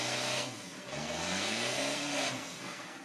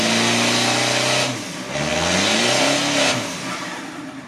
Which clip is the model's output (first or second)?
first